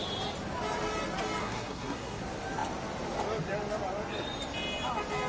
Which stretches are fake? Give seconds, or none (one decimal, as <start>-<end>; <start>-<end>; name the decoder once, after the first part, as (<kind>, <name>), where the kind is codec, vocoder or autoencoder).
1.4-2.2 (codec, SNAC)

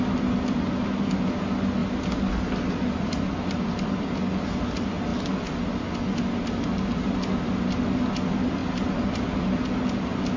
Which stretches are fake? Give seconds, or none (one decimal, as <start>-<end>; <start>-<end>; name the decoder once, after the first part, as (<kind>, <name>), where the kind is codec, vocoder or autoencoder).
1.8-4.2 (vocoder, BigVGAN v2); 8.6-9.8

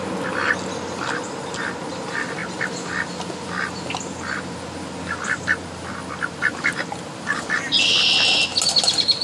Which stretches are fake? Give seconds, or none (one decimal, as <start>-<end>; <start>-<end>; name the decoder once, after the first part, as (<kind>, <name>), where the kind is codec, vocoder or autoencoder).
none

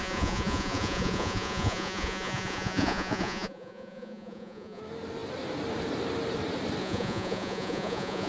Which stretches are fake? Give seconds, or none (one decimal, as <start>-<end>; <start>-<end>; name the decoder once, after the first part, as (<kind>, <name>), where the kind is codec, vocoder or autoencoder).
0.0-4.8 (vocoder, Vocos); 6.8-8.3

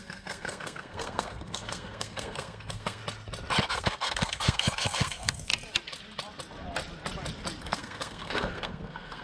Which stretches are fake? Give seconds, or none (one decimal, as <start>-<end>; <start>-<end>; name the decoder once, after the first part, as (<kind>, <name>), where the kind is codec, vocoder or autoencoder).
0.0-3.0 (codec, SNAC); 3.7-5.5; 7.6-9.2

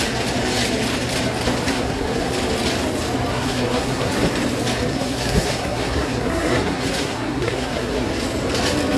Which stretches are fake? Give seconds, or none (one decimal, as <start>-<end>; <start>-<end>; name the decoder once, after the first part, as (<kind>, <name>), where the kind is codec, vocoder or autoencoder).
1.7-2.3 (codec, SNAC); 3.3-4.1; 4.9-8.1